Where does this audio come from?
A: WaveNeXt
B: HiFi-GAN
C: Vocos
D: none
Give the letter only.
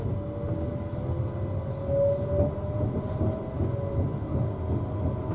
D